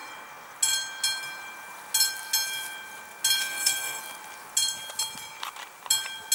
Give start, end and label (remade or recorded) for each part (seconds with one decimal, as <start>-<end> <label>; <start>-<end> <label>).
0.0-3.4 recorded; 3.4-4.0 remade; 4.0-6.3 recorded